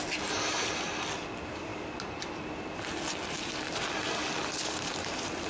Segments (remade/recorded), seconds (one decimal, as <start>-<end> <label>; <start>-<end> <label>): 0.0-5.5 recorded

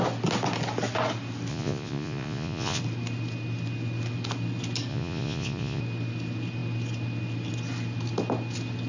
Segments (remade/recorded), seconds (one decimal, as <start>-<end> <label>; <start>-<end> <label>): 0.0-1.5 recorded; 1.5-2.8 remade; 2.8-4.9 recorded; 4.9-5.8 remade; 5.8-8.9 recorded